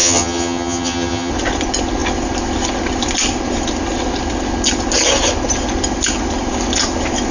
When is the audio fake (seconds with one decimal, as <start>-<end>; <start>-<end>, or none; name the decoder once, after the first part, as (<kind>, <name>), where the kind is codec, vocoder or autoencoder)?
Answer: 0.0-1.3 (vocoder, HiFi-GAN)